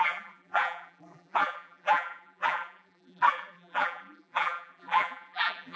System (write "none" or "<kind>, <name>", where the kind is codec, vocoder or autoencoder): vocoder, BigVGAN v2